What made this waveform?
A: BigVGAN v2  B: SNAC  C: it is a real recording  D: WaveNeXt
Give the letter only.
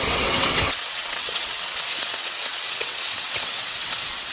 D